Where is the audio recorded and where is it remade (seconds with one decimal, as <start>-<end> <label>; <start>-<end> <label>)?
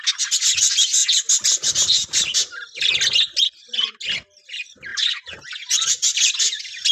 0.0-6.9 recorded